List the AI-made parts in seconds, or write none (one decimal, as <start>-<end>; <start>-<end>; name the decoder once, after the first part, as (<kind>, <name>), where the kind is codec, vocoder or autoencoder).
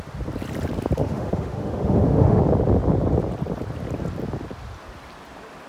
1.0-2.4 (autoencoder, DAC-VAE)